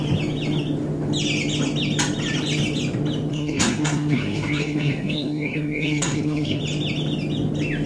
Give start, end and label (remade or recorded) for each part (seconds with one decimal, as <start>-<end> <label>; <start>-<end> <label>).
0.0-3.3 recorded; 3.3-6.6 remade; 6.6-7.9 recorded